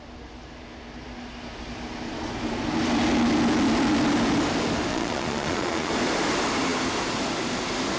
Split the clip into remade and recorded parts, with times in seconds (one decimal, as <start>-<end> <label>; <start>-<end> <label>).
0.0-4.9 recorded; 4.9-5.9 remade; 5.9-8.0 recorded